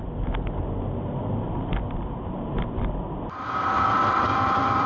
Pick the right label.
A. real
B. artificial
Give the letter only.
A